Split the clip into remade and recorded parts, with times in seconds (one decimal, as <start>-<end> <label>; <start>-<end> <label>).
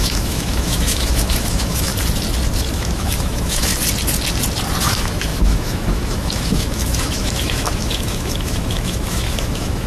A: 0.0-1.9 remade; 1.9-2.7 recorded; 2.7-3.7 remade; 3.7-4.8 recorded; 4.8-9.9 remade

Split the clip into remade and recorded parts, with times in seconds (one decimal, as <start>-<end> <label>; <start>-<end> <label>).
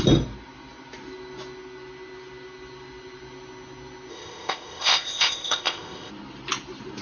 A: 0.0-4.1 recorded; 4.1-6.1 remade; 6.1-7.0 recorded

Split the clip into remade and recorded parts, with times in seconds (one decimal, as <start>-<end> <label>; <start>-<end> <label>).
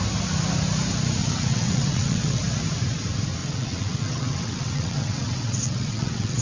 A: 0.0-1.2 recorded; 1.2-2.4 remade; 2.4-3.4 recorded; 3.4-6.4 remade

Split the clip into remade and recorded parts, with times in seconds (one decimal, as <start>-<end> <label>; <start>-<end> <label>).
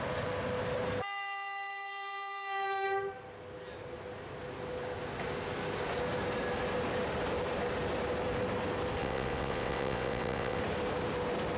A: 0.0-9.0 recorded; 9.0-10.6 remade; 10.6-11.6 recorded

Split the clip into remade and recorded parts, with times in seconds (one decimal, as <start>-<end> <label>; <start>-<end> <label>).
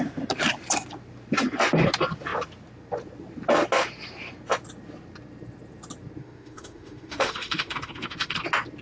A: 0.0-6.2 recorded; 6.2-8.4 remade; 8.4-8.8 recorded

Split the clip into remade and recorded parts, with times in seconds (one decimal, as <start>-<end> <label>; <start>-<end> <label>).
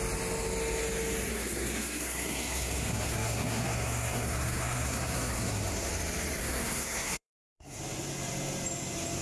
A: 0.0-1.3 recorded; 1.3-5.9 remade; 5.9-6.4 recorded; 6.4-7.8 remade; 7.8-9.2 recorded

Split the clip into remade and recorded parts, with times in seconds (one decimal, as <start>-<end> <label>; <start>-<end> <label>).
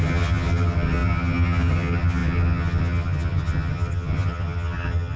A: 0.0-5.2 remade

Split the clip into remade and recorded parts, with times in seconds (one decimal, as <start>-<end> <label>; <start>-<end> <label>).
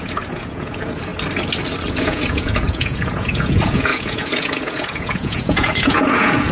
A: 0.0-1.1 remade; 1.1-2.0 recorded; 2.0-6.5 remade